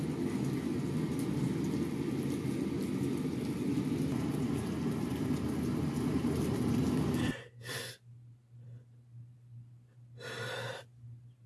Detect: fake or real real